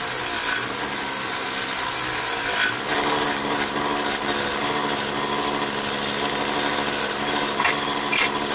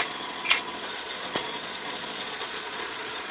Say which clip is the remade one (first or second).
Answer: second